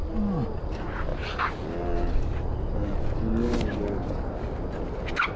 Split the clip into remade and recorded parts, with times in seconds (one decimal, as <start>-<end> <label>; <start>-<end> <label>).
0.0-5.4 recorded